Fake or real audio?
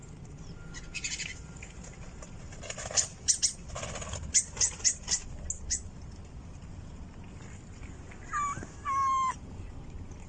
real